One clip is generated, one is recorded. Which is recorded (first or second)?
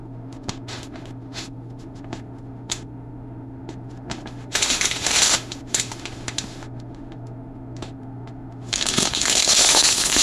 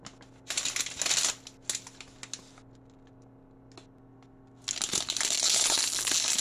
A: second